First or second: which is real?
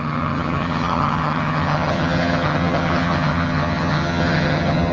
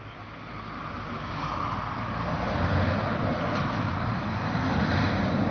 second